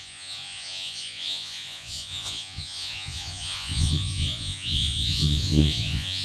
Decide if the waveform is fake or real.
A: fake